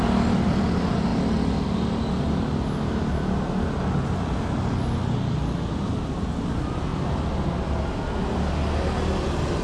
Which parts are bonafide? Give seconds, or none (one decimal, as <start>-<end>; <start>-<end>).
0.0-9.6